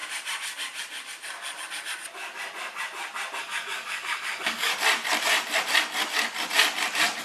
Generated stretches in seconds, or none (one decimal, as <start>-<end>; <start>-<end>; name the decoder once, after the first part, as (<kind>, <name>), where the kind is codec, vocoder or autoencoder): 3.4-4.7 (codec, DAC)